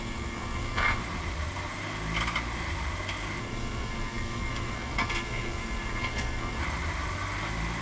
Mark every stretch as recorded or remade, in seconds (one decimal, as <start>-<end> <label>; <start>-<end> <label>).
0.0-1.0 remade; 1.0-3.4 recorded; 3.4-6.6 remade; 6.6-7.8 recorded